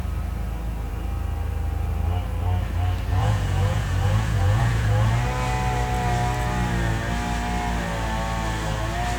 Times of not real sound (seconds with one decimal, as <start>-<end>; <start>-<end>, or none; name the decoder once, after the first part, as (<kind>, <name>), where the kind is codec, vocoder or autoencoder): 3.1-5.1 (vocoder, Vocos)